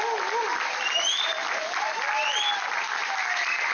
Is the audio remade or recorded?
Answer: recorded